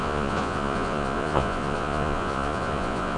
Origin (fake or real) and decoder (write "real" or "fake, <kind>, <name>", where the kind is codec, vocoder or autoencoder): fake, vocoder, Vocos